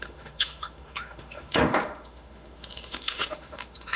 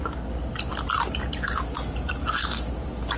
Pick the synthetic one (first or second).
first